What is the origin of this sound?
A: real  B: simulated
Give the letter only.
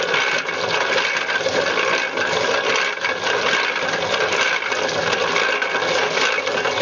A